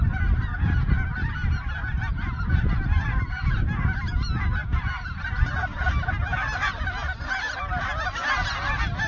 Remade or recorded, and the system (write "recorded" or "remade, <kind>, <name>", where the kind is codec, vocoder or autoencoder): recorded